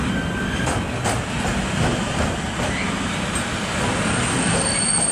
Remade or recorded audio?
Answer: recorded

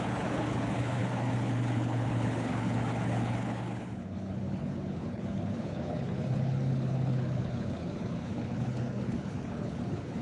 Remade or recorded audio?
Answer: remade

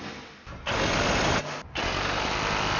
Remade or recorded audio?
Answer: recorded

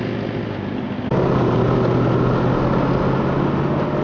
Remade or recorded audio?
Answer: recorded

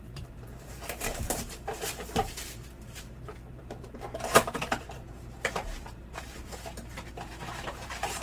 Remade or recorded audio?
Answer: remade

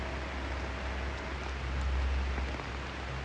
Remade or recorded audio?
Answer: recorded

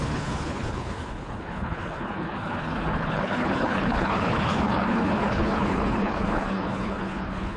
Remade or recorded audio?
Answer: remade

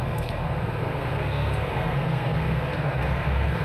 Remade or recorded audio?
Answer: remade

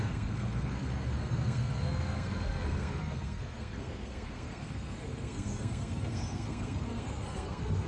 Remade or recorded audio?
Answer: remade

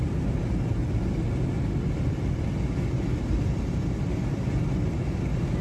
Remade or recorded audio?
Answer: recorded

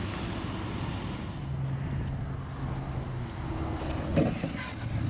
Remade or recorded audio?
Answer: recorded